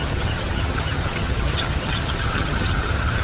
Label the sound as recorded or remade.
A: remade